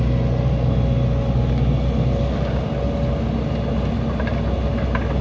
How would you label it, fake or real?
real